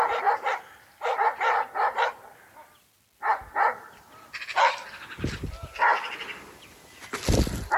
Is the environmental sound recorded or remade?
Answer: recorded